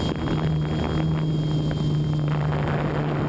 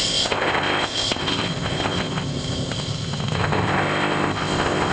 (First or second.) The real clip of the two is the first